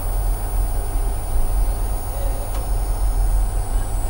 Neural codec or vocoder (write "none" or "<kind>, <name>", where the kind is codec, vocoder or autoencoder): none